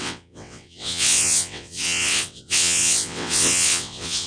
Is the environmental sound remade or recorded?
remade